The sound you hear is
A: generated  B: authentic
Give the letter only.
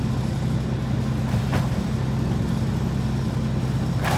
B